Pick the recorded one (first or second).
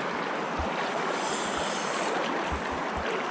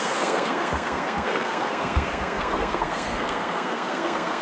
first